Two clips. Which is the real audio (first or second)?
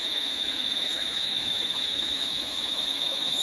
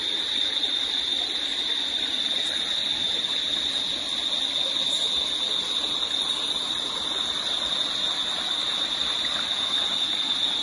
second